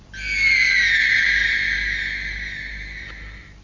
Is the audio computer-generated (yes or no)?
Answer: no